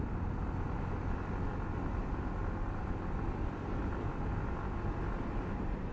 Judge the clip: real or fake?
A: real